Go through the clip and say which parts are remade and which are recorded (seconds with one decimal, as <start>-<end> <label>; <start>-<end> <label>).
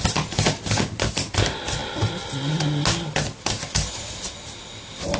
0.0-5.2 recorded